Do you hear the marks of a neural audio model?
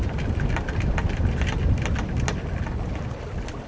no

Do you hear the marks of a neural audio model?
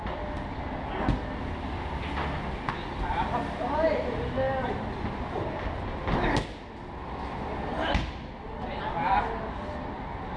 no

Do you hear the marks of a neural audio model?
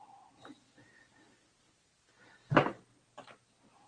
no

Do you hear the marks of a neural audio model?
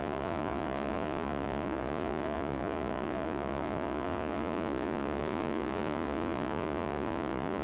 yes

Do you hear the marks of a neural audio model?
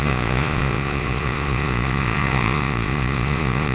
yes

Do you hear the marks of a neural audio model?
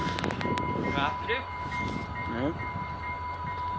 no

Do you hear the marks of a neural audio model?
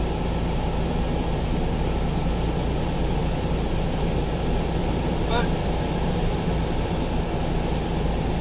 no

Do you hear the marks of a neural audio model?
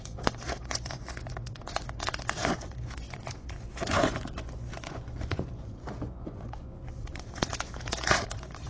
yes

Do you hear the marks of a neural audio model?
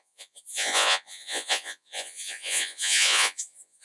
yes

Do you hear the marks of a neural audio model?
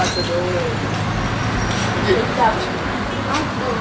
no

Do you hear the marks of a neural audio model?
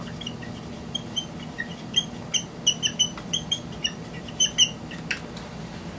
no